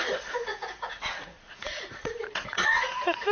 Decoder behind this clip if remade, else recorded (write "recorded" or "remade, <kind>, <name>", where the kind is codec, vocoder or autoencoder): remade, vocoder, Vocos